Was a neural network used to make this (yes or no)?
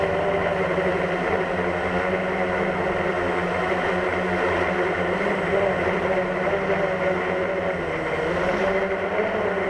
no